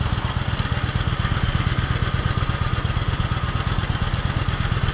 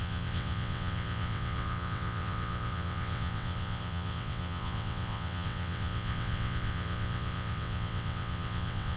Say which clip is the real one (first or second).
first